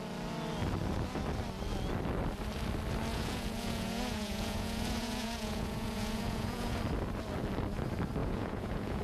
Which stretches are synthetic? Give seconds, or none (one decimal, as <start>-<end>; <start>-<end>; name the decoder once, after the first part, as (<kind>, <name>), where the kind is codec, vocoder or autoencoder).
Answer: 3.1-6.8 (vocoder, Vocos); 8.2-9.0